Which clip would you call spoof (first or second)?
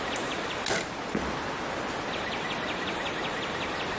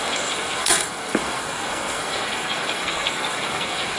second